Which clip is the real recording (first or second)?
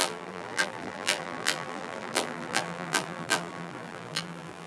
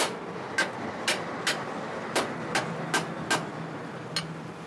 second